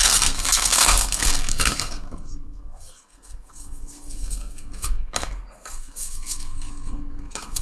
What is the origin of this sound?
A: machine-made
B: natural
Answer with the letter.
A